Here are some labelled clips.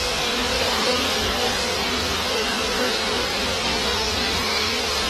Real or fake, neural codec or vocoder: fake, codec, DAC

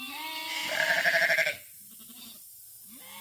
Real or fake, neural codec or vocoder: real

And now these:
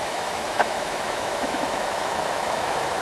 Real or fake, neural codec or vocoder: fake, autoencoder, DAC-VAE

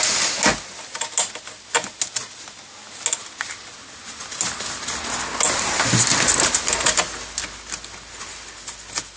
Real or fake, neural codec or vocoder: real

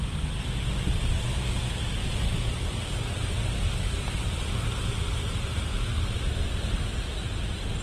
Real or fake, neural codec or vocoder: real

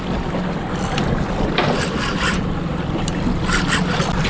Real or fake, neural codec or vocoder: real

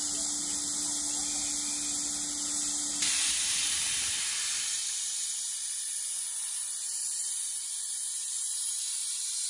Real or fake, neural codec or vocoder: real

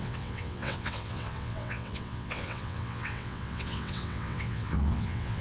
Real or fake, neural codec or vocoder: fake, vocoder, WaveNeXt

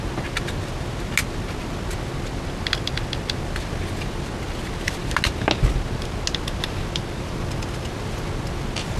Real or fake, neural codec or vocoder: real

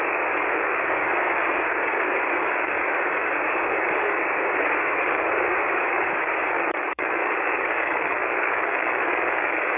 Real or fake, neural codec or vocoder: fake, codec, DAC